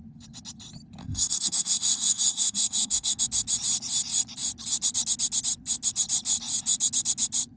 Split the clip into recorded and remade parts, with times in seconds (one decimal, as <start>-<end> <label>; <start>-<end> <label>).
0.0-1.0 recorded; 1.0-3.2 remade; 3.2-7.6 recorded

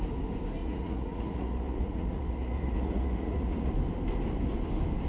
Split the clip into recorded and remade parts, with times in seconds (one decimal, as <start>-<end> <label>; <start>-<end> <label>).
0.0-0.6 recorded; 0.6-3.7 remade; 3.7-5.1 recorded

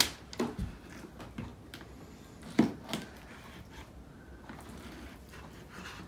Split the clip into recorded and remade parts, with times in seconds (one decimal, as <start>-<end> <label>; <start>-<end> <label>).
0.0-6.1 recorded

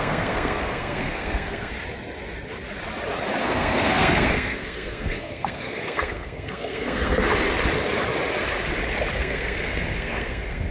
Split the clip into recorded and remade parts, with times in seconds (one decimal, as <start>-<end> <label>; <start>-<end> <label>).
0.0-1.7 remade; 1.7-3.4 recorded; 3.4-7.3 remade; 7.3-9.1 recorded; 9.1-10.7 remade

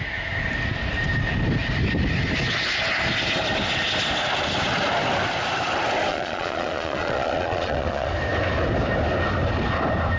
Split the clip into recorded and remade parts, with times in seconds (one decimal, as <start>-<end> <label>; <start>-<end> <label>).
0.0-6.1 recorded; 6.1-8.1 remade; 8.1-10.2 recorded

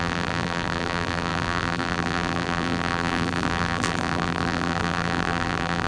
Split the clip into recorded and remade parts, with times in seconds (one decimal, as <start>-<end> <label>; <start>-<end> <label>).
0.0-5.9 remade

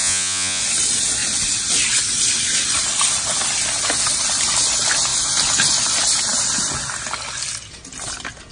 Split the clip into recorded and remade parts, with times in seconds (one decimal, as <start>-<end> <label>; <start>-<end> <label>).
0.0-0.6 remade; 0.6-8.5 recorded